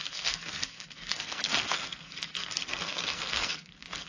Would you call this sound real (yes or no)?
no